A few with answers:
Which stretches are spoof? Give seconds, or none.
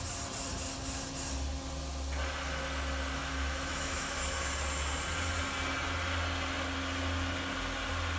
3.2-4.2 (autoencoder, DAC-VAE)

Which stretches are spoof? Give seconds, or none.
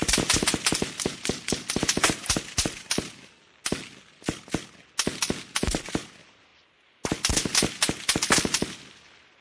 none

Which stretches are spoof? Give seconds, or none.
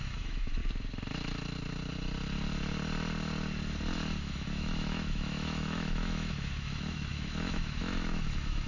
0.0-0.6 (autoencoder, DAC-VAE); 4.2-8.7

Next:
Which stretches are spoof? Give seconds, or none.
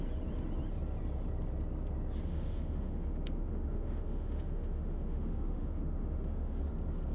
2.3-6.6 (autoencoder, DAC-VAE)